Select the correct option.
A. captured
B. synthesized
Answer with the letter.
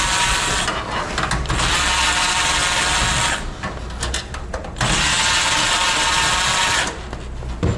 A